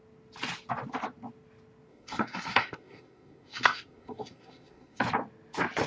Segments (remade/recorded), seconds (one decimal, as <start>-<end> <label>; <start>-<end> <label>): 0.0-1.9 recorded; 1.9-5.0 remade; 5.0-5.9 recorded